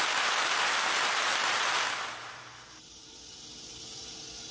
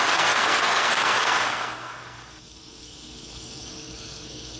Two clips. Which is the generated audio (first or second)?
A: second